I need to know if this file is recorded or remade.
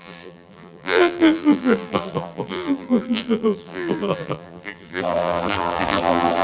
remade